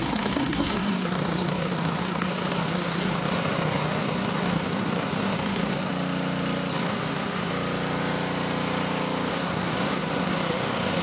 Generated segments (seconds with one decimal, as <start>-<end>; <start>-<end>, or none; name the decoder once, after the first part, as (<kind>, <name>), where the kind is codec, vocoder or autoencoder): 0.0-5.9 (codec, SNAC); 6.7-7.5; 9.3-11.0